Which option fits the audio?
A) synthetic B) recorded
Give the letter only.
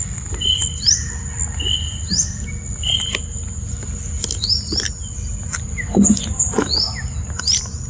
B